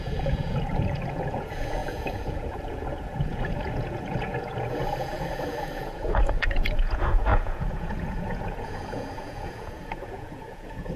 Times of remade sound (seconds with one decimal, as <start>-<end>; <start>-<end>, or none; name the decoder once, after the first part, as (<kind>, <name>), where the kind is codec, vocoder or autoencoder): 0.0-11.0 (vocoder, Vocos)